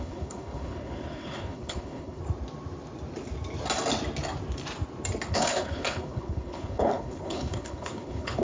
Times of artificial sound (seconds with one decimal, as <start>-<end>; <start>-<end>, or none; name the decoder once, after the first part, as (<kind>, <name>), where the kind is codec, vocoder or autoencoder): 0.0-2.2 (codec, HILCodec); 5.3-8.4